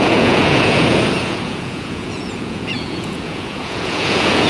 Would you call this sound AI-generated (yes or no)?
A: yes